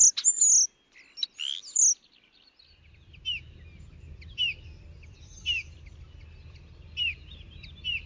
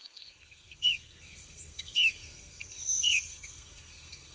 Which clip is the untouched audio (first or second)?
first